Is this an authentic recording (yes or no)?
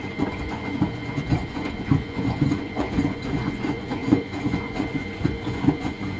no